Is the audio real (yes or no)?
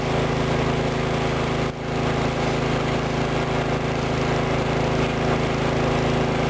yes